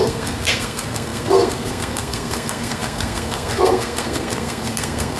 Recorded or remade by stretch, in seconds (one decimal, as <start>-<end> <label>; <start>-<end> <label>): 0.0-5.2 remade